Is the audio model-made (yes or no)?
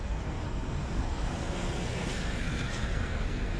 yes